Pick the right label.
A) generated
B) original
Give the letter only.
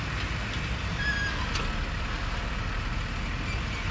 B